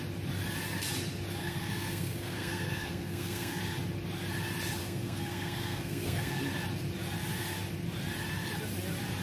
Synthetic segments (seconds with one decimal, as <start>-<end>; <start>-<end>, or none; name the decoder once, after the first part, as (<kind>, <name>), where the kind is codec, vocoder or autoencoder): 1.4-3.6 (codec, SNAC); 4.8-6.4